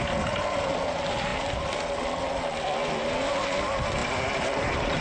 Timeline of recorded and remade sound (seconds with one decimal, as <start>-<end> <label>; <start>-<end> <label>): 0.0-5.0 recorded